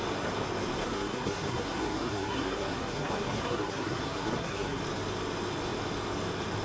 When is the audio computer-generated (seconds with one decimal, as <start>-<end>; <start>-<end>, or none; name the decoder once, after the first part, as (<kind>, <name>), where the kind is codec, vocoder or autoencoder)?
0.8-4.8 (codec, SNAC)